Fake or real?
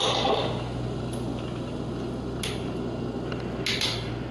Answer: real